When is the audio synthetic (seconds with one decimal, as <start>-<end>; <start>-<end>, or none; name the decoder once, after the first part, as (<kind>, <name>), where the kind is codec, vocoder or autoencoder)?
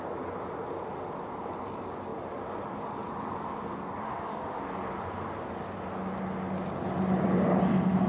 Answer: 4.0-4.6 (autoencoder, DAC-VAE)